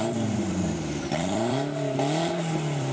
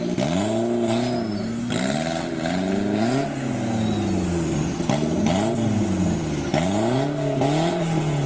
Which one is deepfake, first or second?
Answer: first